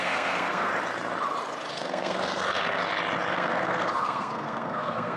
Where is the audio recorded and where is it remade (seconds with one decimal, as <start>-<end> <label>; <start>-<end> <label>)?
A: 0.0-0.7 remade; 0.7-1.8 recorded; 1.8-2.8 remade; 2.8-3.3 recorded; 3.3-5.2 remade